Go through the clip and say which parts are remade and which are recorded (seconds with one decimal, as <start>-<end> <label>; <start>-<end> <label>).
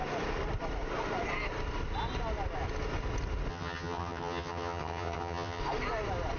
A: 0.0-3.5 recorded; 3.5-5.6 remade; 5.6-6.4 recorded